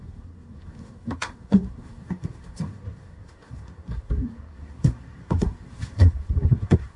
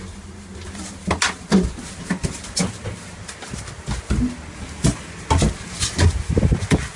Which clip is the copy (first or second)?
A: first